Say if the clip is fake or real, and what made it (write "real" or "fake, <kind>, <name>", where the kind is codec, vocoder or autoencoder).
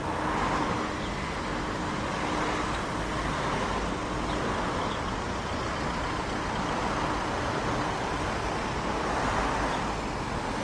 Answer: real